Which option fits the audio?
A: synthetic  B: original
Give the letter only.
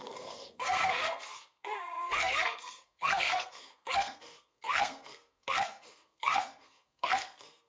A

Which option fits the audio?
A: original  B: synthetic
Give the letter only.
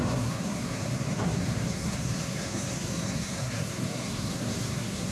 B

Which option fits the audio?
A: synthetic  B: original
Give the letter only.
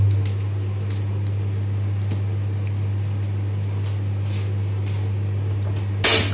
B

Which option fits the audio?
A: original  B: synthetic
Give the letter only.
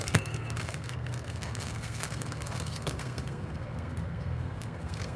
B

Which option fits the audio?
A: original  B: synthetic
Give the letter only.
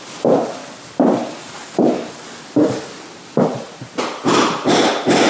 A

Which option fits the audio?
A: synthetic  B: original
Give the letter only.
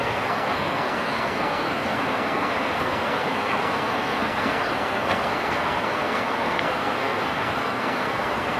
A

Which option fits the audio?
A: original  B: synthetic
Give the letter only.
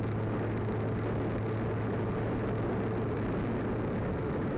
A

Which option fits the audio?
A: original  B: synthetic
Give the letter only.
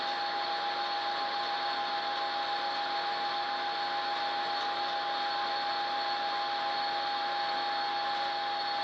A